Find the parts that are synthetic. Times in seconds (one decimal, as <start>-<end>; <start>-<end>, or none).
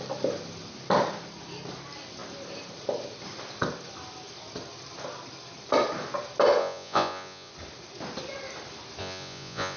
6.6-7.5; 9.0-9.8